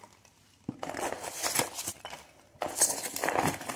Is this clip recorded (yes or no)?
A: yes